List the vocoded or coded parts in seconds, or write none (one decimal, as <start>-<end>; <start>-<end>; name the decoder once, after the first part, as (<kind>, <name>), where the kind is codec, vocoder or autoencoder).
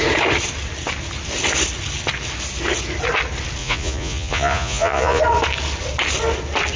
3.6-5.2 (vocoder, Vocos)